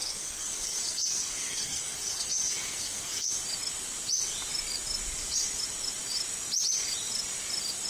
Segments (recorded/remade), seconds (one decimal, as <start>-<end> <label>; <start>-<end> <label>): 0.0-3.3 remade; 3.3-7.9 recorded